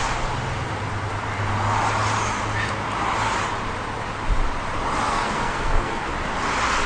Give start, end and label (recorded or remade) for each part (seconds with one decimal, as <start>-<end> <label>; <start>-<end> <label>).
0.0-5.1 recorded; 5.1-6.1 remade; 6.1-6.9 recorded